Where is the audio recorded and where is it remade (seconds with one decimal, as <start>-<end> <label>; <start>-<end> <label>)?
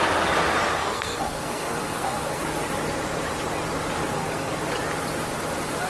0.0-0.8 recorded; 0.8-2.4 remade; 2.4-4.1 recorded; 4.1-4.6 remade; 4.6-5.9 recorded